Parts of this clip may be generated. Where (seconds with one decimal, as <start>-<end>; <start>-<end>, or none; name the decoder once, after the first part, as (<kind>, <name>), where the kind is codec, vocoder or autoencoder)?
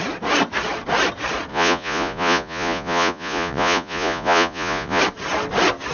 1.5-5.0 (vocoder, Vocos)